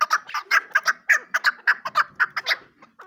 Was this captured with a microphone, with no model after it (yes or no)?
yes